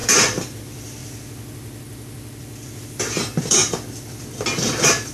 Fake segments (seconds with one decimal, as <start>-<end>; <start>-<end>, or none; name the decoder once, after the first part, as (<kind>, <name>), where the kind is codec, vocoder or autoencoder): 0.0-1.0 (vocoder, BigVGAN v2); 2.8-5.1